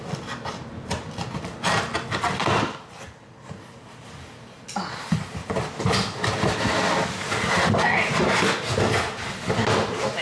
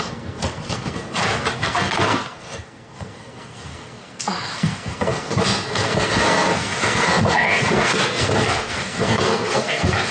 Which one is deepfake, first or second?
second